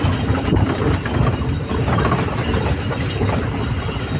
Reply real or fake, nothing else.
fake